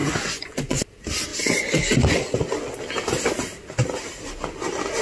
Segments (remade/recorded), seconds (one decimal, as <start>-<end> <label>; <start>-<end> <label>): 0.0-0.8 remade; 0.8-5.0 recorded